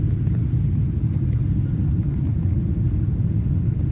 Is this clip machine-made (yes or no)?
no